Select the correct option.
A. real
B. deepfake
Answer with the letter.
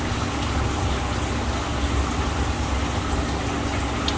A